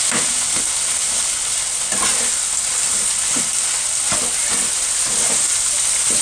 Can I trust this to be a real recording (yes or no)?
yes